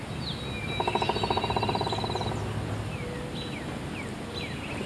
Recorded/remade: recorded